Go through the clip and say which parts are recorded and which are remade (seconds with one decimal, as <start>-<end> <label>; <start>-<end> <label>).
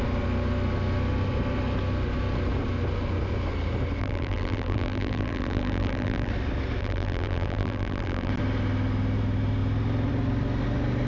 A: 0.0-4.0 recorded; 4.0-6.3 remade; 6.3-6.8 recorded; 6.8-8.3 remade; 8.3-11.1 recorded